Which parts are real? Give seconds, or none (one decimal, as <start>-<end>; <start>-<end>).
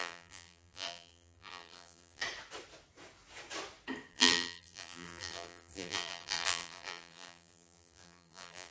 2.2-4.1